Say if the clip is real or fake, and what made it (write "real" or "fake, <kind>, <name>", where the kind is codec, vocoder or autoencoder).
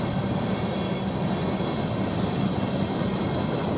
real